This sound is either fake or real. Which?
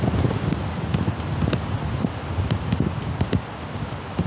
real